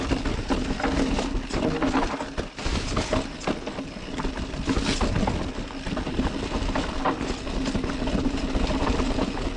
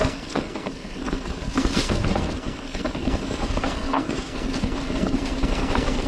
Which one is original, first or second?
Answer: first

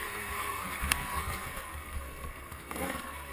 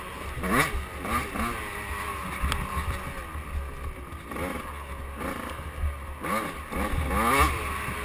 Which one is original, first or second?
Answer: second